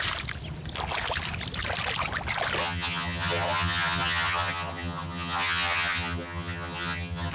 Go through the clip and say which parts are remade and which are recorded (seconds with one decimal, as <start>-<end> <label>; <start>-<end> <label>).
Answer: 0.0-2.6 recorded; 2.6-7.3 remade